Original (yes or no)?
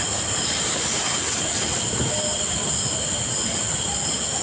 yes